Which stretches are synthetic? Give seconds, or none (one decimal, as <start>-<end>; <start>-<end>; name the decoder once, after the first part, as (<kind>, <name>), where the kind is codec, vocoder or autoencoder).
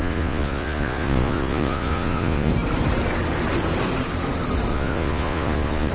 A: 0.0-2.5 (vocoder, Vocos); 4.7-5.9